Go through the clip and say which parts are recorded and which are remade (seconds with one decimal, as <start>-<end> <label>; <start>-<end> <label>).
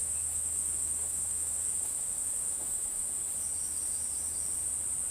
0.0-3.1 remade; 3.1-5.1 recorded